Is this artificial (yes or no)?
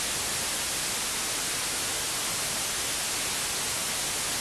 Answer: no